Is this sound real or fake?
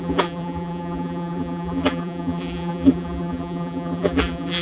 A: fake